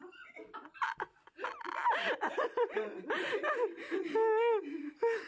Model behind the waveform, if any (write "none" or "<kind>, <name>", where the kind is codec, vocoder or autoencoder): none